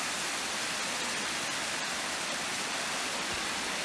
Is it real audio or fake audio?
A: real